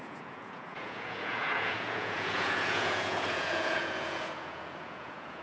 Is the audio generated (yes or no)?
yes